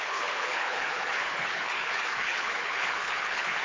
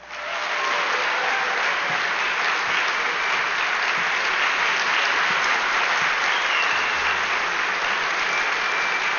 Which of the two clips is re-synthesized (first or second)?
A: first